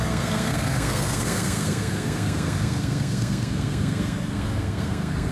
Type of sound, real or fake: fake